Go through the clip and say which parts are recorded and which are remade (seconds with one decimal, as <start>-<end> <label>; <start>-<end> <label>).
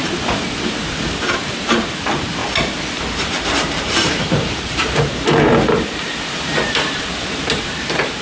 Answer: 0.0-2.4 remade; 2.4-3.4 recorded; 3.4-8.2 remade